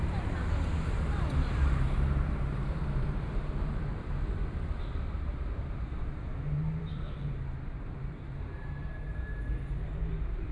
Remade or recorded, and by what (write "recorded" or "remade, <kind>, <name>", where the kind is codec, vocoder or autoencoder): remade, vocoder, BigVGAN v2